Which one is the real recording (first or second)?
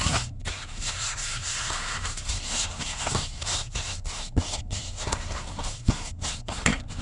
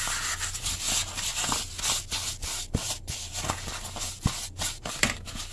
second